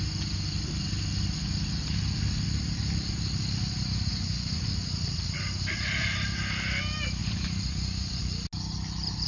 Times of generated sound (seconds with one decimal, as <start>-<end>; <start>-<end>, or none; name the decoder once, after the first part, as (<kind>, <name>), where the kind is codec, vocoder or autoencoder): 4.1-4.7 (vocoder, Vocos); 7.2-8.2